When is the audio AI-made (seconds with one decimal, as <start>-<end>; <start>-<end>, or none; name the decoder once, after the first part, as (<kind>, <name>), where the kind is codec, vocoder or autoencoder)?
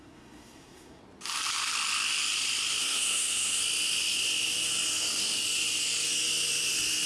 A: 0.0-1.0 (codec, SNAC); 2.8-3.6